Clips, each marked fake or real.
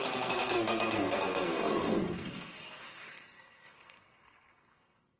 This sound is fake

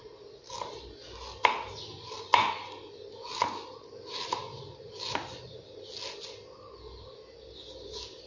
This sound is real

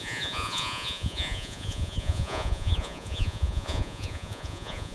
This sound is fake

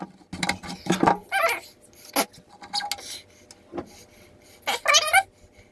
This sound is real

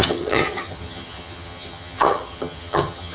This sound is fake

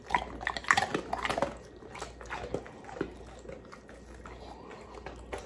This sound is real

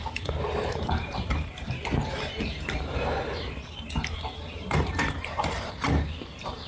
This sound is fake